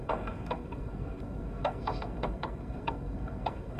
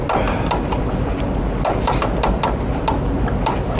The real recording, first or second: second